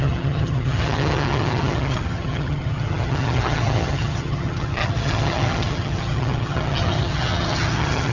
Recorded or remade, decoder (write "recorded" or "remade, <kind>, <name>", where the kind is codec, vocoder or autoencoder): remade, vocoder, HiFi-GAN